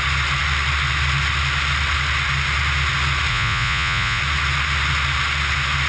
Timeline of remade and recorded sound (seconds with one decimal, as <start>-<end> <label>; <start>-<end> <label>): 0.0-3.3 recorded; 3.3-4.2 remade; 4.2-5.9 recorded